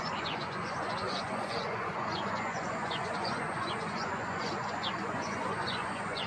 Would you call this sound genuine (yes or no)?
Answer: no